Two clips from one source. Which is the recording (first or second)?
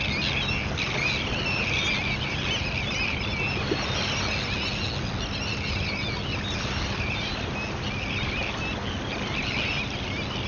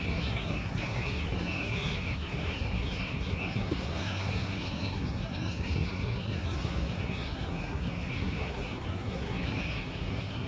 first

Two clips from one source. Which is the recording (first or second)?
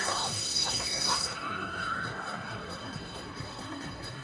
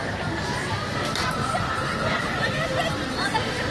second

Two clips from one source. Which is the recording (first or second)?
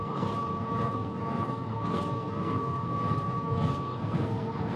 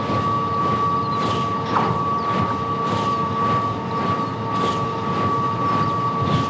second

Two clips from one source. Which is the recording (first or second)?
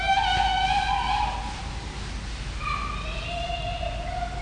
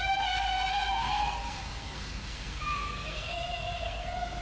first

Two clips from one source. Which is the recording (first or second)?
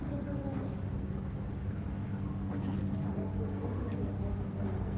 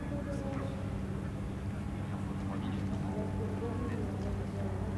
second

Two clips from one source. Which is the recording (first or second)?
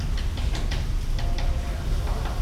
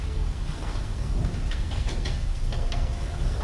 first